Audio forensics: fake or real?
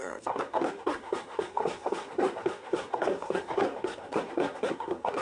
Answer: fake